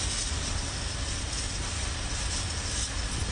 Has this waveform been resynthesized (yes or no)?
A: no